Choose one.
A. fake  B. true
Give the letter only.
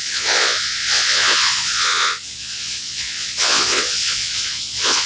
A